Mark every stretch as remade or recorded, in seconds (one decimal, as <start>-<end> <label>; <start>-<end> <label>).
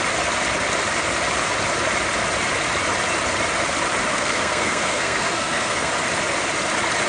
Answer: 0.0-4.1 recorded; 4.1-5.9 remade; 5.9-7.1 recorded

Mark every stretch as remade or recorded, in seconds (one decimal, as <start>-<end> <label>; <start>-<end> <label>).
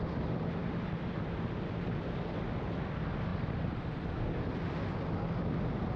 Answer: 0.0-0.6 recorded; 0.6-1.2 remade; 1.2-3.3 recorded; 3.3-4.2 remade; 4.2-6.0 recorded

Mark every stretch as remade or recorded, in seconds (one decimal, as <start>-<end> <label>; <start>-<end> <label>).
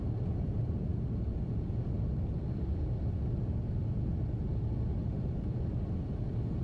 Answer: 0.0-6.6 recorded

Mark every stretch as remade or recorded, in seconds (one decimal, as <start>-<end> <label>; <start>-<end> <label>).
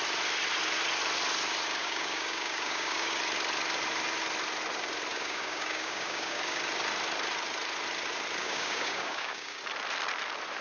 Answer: 0.0-1.8 recorded; 1.8-3.2 remade; 3.2-5.1 recorded; 5.1-6.6 remade; 6.6-8.4 recorded; 8.4-9.6 remade; 9.6-10.6 recorded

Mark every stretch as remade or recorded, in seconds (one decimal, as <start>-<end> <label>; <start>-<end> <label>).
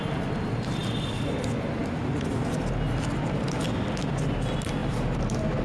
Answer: 0.0-0.8 recorded; 0.8-1.4 remade; 1.4-4.8 recorded; 4.8-5.6 remade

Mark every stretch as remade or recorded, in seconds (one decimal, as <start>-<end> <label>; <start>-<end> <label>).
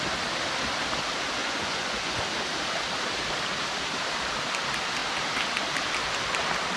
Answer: 0.0-1.4 recorded; 1.4-2.2 remade; 2.2-6.8 recorded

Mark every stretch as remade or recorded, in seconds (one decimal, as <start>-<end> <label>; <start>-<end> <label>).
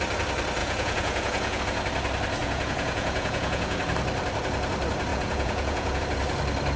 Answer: 0.0-0.6 recorded; 0.6-1.6 remade; 1.6-2.4 recorded; 2.4-3.8 remade; 3.8-5.1 recorded; 5.1-6.0 remade; 6.0-6.8 recorded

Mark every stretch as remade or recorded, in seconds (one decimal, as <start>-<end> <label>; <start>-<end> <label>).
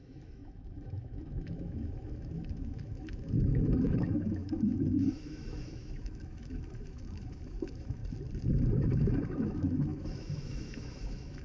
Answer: 0.0-8.0 remade; 8.0-8.8 recorded; 8.8-11.4 remade